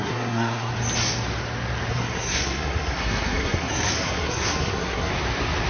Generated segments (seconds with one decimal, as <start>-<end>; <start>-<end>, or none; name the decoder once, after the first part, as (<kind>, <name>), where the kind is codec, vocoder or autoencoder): 0.0-0.7 (codec, SNAC); 1.9-5.1